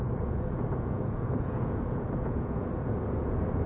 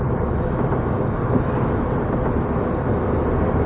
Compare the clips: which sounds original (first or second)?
second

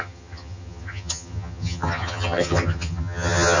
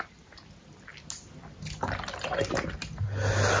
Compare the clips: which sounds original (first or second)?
second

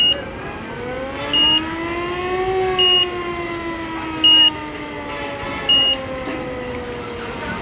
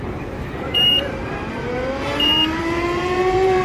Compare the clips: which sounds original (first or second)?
first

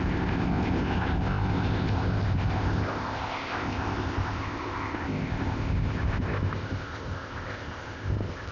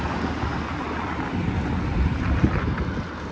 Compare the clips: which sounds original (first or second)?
second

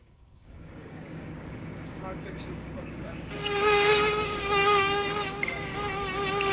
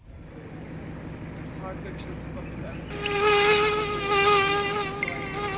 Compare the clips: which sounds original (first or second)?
second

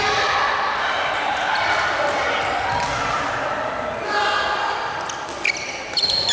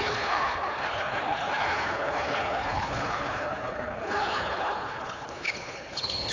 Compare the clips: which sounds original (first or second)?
first